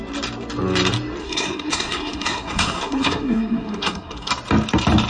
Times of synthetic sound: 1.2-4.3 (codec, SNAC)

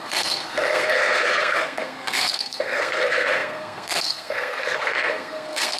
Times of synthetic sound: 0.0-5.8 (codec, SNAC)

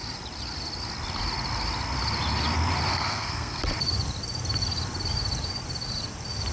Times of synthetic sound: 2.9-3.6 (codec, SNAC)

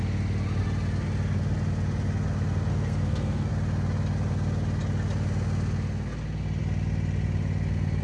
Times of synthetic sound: 2.7-3.5 (codec, SNAC)

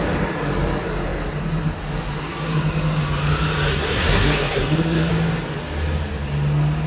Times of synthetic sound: 3.7-5.1 (codec, SNAC)

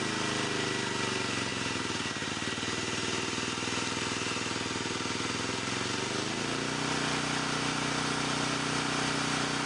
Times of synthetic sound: none

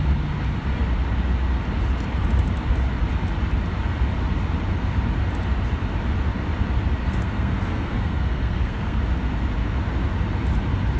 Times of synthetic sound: 7.0-9.0 (codec, SNAC)

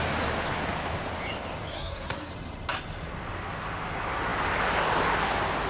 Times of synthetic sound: 1.7-2.3 (codec, SNAC)